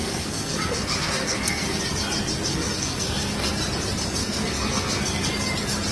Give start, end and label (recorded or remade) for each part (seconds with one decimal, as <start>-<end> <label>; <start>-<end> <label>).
0.0-1.8 remade; 1.8-2.5 recorded; 2.5-3.5 remade; 3.5-4.2 recorded; 4.2-5.3 remade; 5.3-5.9 recorded